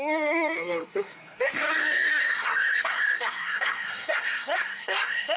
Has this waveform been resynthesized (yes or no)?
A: yes